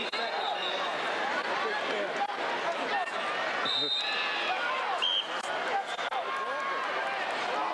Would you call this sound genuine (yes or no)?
yes